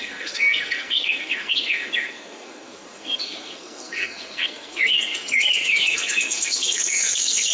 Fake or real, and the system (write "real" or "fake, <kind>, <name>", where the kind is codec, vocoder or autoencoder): fake, codec, SNAC